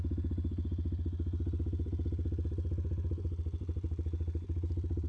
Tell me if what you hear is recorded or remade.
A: recorded